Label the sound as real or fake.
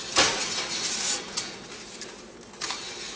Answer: real